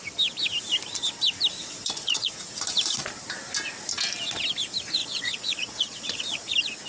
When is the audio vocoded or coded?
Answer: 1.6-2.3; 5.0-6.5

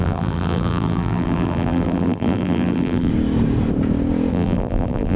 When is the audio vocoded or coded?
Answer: 0.0-3.1; 4.3-5.2

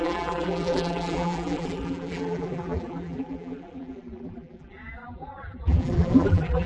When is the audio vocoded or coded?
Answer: 0.0-6.7